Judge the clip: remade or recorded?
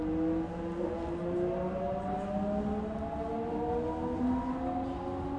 recorded